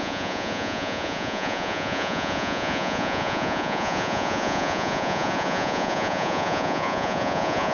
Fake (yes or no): yes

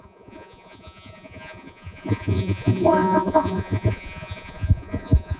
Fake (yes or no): yes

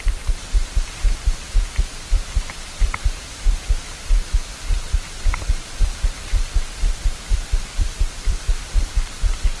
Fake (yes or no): no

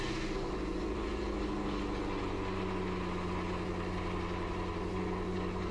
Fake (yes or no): no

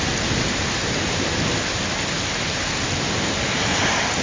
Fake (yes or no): no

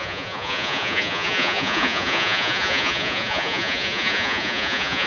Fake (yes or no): yes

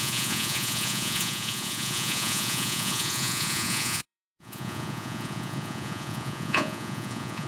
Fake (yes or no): yes